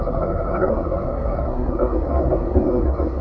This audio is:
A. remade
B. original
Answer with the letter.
A